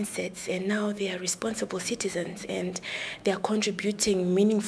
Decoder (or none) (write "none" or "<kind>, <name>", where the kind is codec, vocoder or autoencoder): autoencoder, DAC-VAE